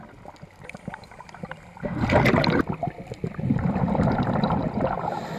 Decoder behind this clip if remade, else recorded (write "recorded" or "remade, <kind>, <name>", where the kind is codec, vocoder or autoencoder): remade, vocoder, BigVGAN v2